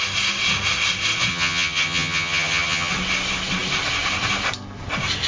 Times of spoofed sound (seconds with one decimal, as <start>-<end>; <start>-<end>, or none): 1.3-2.9